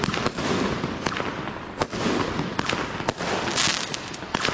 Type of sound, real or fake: real